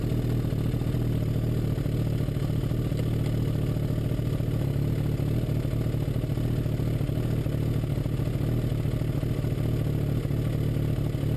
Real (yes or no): yes